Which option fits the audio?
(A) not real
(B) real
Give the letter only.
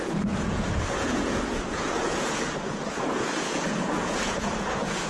A